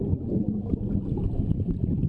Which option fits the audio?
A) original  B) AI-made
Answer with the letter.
A